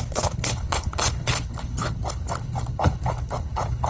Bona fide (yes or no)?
no